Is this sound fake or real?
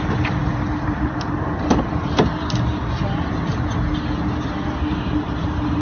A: real